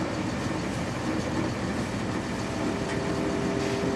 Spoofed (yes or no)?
no